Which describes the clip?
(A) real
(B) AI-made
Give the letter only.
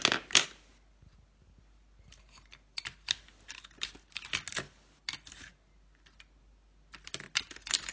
A